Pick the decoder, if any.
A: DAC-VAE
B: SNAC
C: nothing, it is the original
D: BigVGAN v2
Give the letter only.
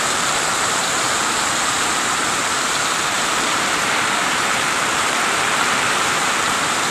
D